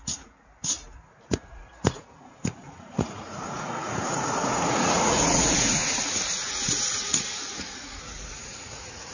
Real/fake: fake